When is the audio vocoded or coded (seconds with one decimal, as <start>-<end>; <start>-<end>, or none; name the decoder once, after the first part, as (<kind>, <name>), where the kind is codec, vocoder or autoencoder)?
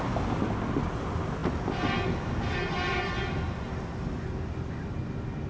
none